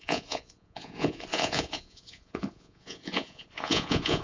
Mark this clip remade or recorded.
remade